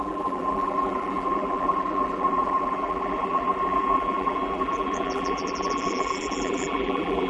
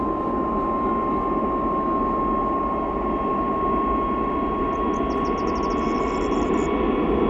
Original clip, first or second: second